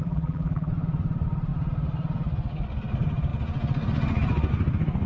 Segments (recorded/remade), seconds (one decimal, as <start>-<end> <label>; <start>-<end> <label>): 0.0-0.7 remade; 0.7-5.1 recorded